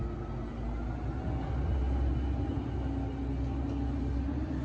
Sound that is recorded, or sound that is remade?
recorded